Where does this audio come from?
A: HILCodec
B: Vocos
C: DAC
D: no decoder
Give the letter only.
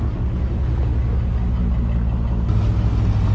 D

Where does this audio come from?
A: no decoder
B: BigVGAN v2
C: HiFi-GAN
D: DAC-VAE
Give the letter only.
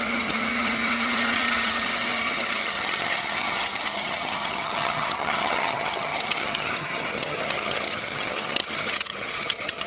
C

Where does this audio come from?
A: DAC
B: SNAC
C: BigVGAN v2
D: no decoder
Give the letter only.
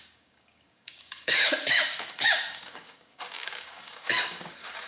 A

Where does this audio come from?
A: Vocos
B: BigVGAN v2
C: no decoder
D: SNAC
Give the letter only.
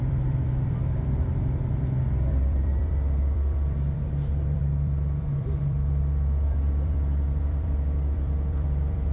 B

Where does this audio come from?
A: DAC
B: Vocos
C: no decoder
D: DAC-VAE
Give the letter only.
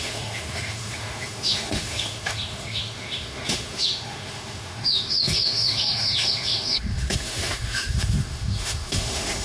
D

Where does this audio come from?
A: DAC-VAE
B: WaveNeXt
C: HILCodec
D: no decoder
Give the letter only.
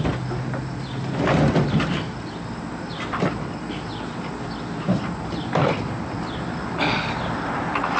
D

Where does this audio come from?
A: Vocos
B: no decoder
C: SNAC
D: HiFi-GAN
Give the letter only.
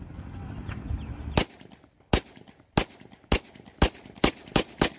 B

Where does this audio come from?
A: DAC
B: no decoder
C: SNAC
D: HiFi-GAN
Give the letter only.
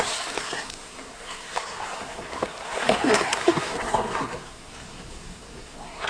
C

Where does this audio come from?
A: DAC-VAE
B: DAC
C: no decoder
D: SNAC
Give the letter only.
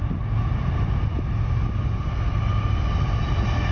C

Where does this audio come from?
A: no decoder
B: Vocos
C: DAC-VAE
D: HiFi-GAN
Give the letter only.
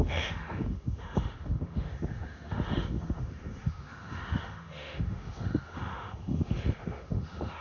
C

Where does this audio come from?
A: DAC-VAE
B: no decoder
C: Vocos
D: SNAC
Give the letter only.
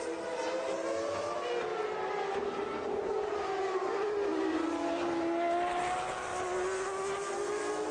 B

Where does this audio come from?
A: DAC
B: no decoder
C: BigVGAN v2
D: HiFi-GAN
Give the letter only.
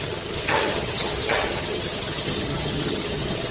D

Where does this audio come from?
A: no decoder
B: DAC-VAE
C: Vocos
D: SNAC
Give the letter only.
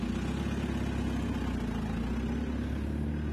A